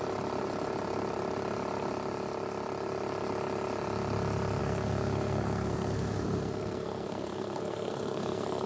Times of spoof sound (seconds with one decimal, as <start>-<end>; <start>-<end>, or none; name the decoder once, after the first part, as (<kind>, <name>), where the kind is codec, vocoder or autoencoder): 4.6-8.7 (codec, SNAC)